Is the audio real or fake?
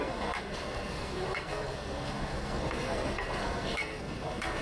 fake